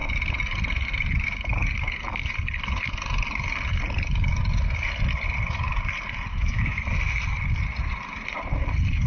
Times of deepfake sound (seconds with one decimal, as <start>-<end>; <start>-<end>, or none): 6.3-6.8